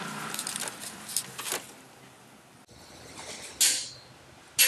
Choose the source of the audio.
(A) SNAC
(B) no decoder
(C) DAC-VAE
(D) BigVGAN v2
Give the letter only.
B